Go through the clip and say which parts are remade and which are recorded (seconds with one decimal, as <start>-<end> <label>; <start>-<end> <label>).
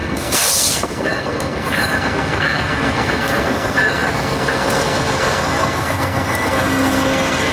0.0-7.5 remade